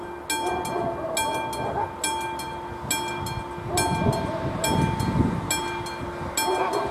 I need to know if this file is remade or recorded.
recorded